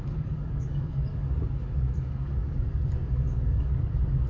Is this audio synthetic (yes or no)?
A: yes